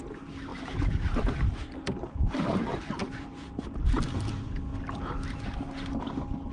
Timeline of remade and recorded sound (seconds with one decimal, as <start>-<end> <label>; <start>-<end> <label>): 0.0-0.5 recorded; 0.5-2.6 remade; 2.6-3.0 recorded; 3.0-3.7 remade; 3.7-6.5 recorded